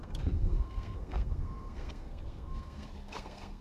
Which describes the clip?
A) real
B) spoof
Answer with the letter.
B